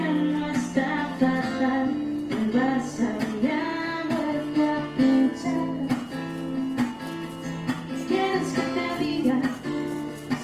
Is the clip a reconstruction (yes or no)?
no